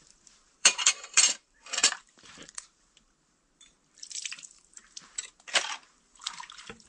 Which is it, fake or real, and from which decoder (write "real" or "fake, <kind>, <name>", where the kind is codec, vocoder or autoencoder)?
fake, vocoder, BigVGAN v2